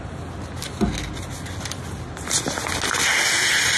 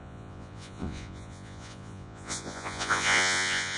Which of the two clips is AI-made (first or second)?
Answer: second